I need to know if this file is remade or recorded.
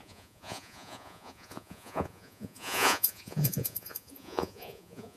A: remade